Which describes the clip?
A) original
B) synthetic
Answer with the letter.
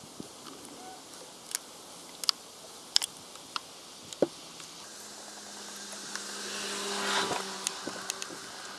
A